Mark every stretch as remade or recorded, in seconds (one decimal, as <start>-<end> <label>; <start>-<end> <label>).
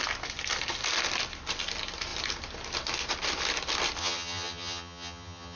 0.0-4.0 recorded; 4.0-5.6 remade